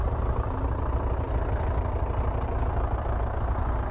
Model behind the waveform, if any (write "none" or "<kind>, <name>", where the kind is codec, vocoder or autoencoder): none